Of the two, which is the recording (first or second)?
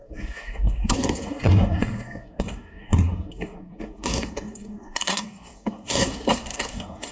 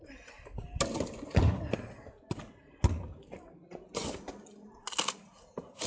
second